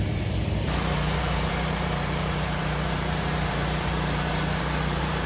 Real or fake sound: fake